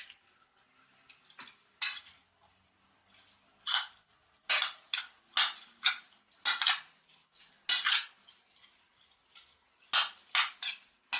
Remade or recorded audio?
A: recorded